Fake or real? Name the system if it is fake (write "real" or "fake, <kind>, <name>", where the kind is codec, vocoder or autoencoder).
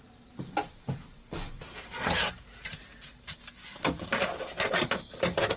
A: fake, vocoder, BigVGAN v2